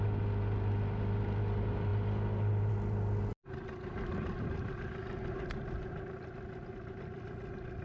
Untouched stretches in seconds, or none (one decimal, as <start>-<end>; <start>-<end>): 0.0-7.8